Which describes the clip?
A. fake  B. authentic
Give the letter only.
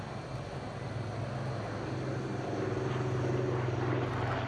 B